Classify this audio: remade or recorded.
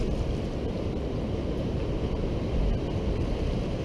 recorded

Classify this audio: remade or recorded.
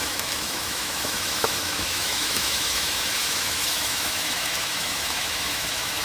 remade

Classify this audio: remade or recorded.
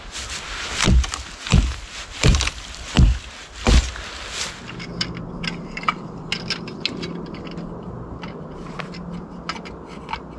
recorded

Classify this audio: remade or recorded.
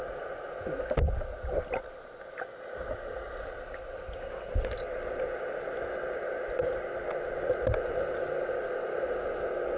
recorded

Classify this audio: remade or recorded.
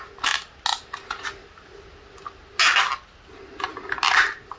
recorded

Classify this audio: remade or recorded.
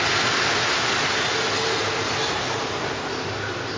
recorded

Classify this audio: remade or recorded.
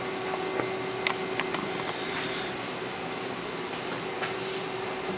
recorded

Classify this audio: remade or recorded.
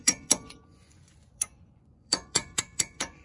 remade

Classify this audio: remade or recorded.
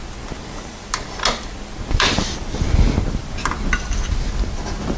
recorded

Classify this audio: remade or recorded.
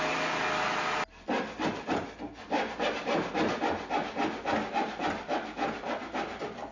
recorded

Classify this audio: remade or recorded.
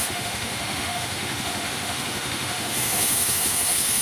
remade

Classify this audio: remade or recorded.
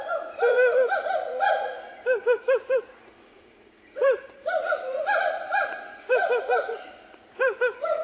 remade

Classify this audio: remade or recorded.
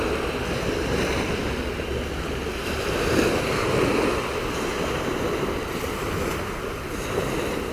recorded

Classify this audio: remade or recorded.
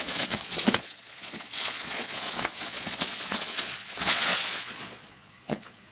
remade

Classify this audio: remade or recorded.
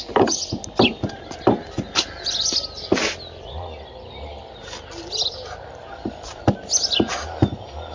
recorded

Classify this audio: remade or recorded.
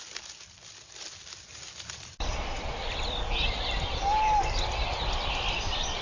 recorded